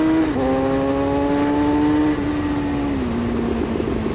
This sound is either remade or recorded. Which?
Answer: recorded